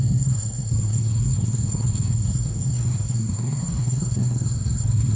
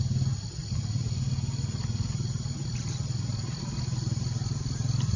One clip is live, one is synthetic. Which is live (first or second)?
second